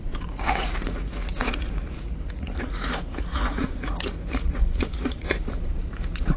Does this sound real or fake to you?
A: fake